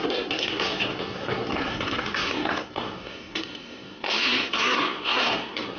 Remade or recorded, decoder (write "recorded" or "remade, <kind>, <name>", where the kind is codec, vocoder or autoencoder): remade, codec, SNAC